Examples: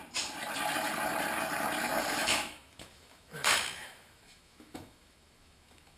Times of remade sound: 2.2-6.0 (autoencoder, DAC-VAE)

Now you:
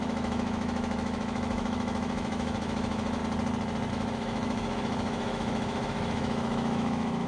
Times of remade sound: 0.0-3.2 (autoencoder, DAC-VAE); 3.9-7.3

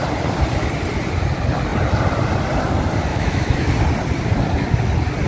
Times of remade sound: 3.1-3.7 (autoencoder, DAC-VAE)

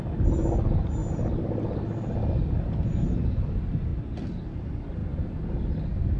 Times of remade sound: none

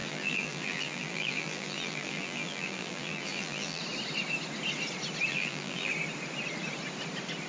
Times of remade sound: 0.0-3.8 (vocoder, BigVGAN v2); 5.3-5.9

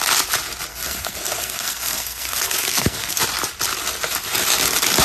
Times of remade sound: 0.7-3.2 (codec, SNAC)

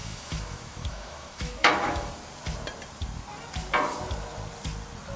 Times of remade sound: 0.0-2.1 (autoencoder, DAC-VAE)

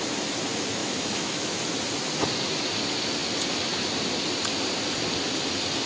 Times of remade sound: 0.8-1.6 (autoencoder, DAC-VAE)